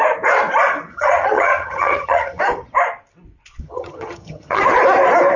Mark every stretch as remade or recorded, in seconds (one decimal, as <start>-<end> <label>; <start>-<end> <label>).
0.0-0.9 recorded; 0.9-2.4 remade; 2.4-3.6 recorded; 3.6-4.6 remade; 4.6-5.4 recorded